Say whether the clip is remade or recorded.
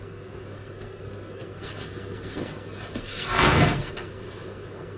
remade